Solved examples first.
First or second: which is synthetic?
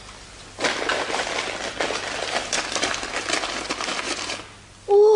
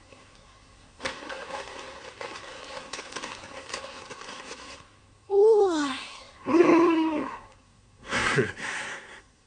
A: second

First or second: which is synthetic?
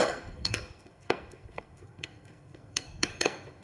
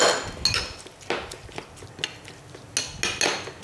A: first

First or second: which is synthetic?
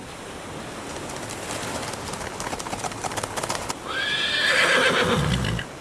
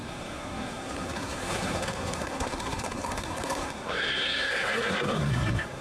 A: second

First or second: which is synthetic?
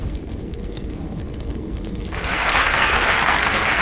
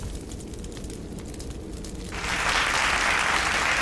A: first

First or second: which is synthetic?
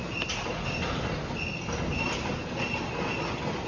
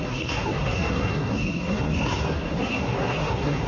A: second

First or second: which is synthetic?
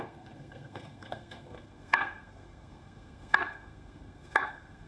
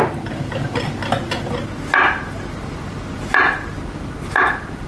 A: first